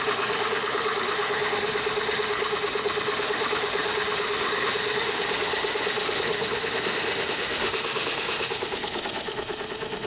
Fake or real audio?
fake